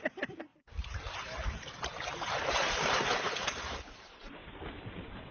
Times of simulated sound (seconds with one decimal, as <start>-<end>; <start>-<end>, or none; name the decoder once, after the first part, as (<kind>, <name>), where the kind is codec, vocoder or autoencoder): 0.0-4.4 (vocoder, BigVGAN v2)